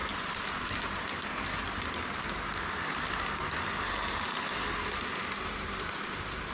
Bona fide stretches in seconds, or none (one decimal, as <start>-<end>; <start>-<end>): 0.0-6.5